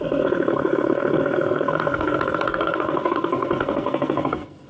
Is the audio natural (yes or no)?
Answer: no